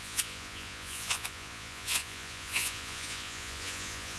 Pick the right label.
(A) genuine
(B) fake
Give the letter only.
B